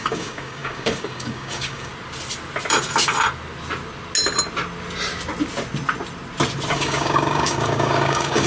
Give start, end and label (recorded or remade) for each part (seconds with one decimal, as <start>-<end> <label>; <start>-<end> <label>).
0.0-1.9 remade; 1.9-6.7 recorded; 6.7-8.5 remade